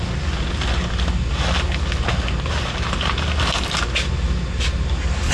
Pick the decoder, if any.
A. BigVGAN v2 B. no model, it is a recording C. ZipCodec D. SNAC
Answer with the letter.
B